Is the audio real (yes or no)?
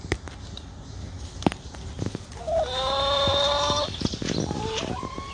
yes